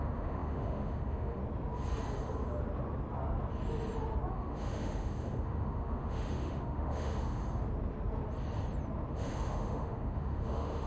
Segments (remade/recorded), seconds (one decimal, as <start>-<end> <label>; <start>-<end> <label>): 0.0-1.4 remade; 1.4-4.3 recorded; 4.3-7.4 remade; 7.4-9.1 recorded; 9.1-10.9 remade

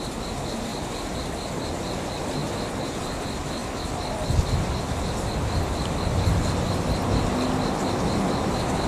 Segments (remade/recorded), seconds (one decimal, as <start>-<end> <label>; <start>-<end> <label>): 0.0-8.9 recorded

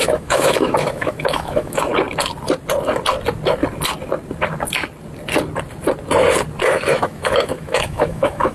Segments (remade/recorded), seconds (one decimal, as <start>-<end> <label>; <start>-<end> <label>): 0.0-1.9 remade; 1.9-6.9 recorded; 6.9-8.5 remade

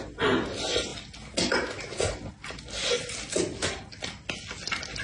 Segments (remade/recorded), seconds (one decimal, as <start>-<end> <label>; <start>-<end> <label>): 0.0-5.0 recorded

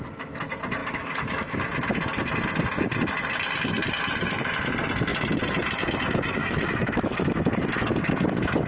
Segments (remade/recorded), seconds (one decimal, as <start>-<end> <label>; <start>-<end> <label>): 0.0-0.8 recorded; 0.8-1.6 remade; 1.6-6.4 recorded; 6.4-7.4 remade; 7.4-8.7 recorded

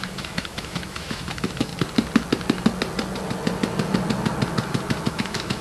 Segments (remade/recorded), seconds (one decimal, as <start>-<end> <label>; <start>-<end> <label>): 0.0-1.7 remade; 1.7-5.1 recorded; 5.1-5.6 remade

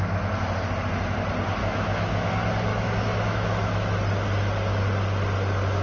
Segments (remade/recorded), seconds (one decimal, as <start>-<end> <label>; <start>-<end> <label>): 0.0-1.6 recorded; 1.6-2.3 remade; 2.3-2.7 recorded; 2.7-4.0 remade; 4.0-5.8 recorded